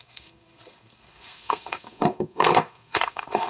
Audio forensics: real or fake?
fake